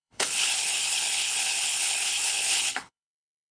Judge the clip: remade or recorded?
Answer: remade